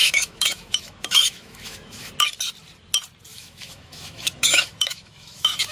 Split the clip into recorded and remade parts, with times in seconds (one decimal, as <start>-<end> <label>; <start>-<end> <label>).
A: 0.0-2.1 remade; 2.1-3.3 recorded; 3.3-5.7 remade